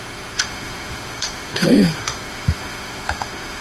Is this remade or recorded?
remade